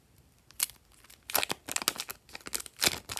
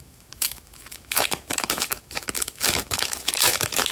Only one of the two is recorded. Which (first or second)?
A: first